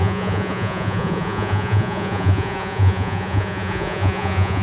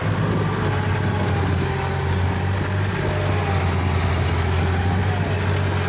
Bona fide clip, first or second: second